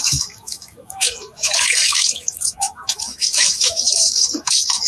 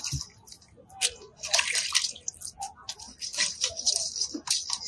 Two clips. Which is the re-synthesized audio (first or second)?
first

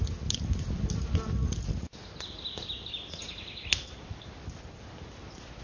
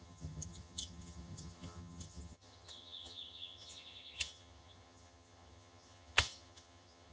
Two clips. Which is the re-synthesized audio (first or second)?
second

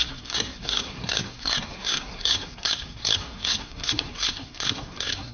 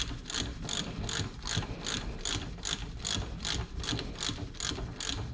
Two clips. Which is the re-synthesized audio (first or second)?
first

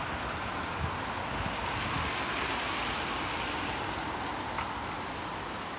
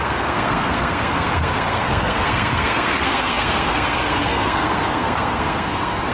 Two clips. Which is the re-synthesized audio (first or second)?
second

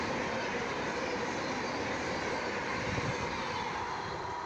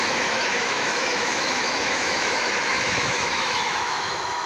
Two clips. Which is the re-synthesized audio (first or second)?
second